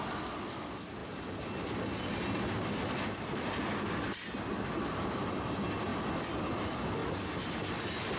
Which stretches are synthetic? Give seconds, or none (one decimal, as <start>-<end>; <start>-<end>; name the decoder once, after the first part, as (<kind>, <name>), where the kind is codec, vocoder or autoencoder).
none